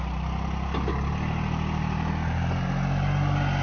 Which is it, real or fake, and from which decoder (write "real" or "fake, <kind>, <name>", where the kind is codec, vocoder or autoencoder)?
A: real